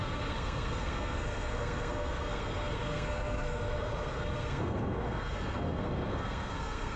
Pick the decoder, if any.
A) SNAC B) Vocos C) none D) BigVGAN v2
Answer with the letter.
A